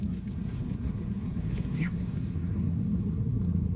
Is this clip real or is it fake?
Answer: fake